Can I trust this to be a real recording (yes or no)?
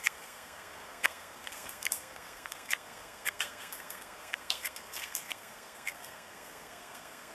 no